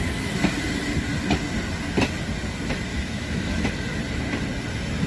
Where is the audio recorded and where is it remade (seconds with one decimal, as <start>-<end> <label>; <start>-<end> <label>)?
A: 0.0-2.9 recorded; 2.9-3.7 remade; 3.7-5.1 recorded